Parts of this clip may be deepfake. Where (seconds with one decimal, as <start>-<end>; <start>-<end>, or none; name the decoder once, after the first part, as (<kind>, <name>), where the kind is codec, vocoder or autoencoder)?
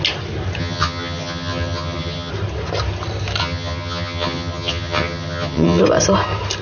0.6-2.3 (vocoder, HiFi-GAN); 3.4-5.8